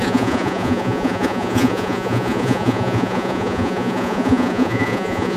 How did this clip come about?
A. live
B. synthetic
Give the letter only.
B